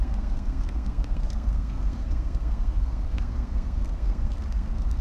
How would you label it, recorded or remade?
remade